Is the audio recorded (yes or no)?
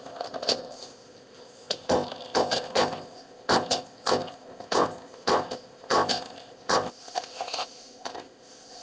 no